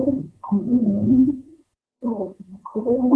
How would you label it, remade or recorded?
remade